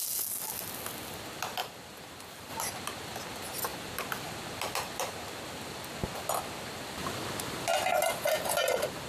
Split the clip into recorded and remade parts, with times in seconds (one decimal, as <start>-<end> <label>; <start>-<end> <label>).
0.0-1.6 recorded; 1.6-2.5 remade; 2.5-9.1 recorded